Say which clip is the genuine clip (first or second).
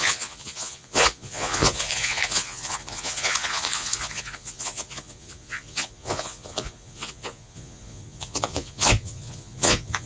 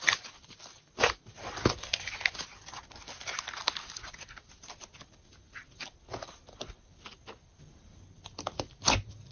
second